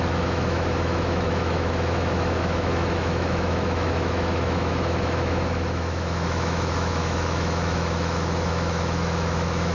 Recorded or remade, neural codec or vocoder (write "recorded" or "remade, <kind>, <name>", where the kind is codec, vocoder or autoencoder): remade, autoencoder, DAC-VAE